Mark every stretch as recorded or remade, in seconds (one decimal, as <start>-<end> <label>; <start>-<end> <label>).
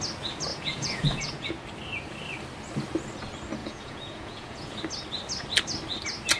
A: 0.0-0.5 recorded; 0.5-1.5 remade; 1.5-3.6 recorded; 3.6-4.8 remade; 4.8-6.4 recorded